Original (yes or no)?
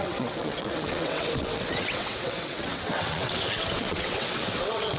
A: no